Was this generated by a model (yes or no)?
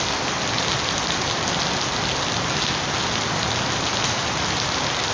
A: no